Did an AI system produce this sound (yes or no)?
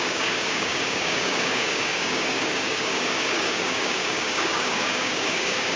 yes